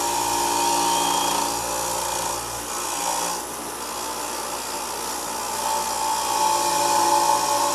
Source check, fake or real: real